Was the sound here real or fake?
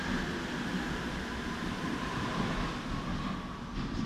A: real